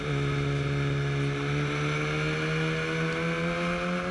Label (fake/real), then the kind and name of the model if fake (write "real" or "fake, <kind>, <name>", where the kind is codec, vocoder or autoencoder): real